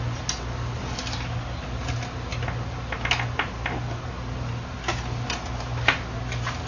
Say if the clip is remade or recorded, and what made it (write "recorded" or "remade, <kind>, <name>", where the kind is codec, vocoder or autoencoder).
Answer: recorded